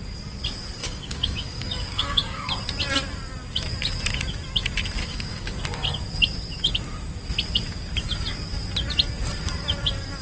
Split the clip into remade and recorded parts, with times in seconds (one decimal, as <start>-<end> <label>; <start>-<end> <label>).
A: 0.0-0.8 recorded; 0.8-2.5 remade; 2.5-5.0 recorded; 5.0-5.6 remade; 5.6-10.2 recorded